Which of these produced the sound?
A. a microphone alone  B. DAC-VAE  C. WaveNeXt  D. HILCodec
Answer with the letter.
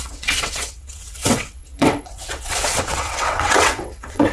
C